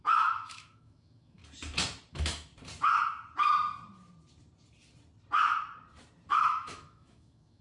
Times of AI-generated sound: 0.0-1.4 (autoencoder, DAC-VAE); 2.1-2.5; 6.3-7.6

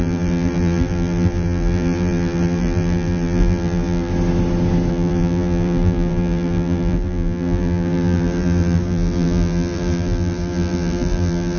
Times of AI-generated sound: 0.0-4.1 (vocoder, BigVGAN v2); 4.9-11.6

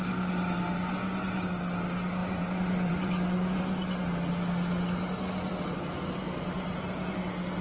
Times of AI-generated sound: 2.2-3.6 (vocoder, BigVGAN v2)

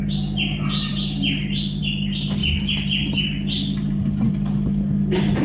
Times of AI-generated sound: none

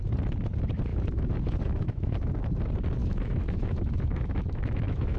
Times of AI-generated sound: 0.9-2.4 (autoencoder, DAC-VAE); 3.0-5.2